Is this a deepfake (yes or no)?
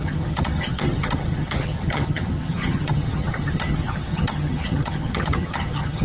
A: yes